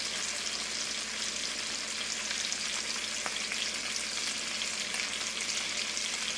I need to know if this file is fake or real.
real